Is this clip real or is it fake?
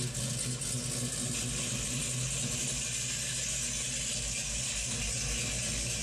real